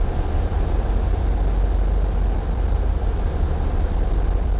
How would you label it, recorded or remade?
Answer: remade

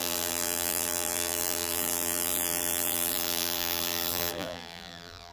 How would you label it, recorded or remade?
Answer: remade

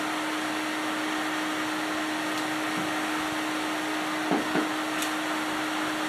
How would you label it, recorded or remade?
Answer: recorded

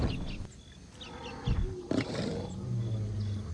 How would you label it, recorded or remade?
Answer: recorded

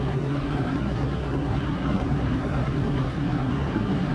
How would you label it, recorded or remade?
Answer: remade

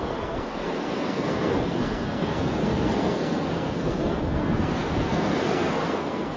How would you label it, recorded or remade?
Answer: remade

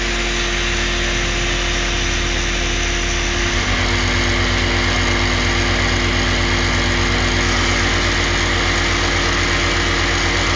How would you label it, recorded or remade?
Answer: recorded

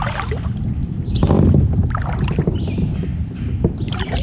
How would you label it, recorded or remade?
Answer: recorded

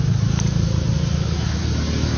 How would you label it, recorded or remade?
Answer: recorded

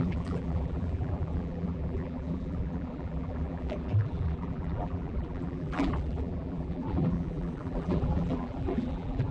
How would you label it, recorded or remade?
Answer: remade